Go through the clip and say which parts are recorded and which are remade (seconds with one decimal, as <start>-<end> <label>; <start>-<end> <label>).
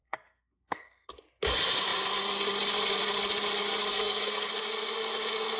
0.0-1.1 remade; 1.1-3.9 recorded; 3.9-4.5 remade; 4.5-5.6 recorded